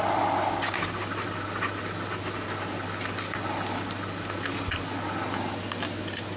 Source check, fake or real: real